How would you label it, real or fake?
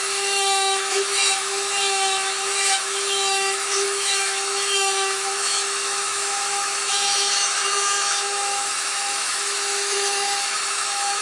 fake